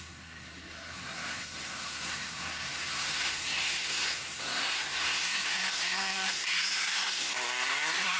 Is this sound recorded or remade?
remade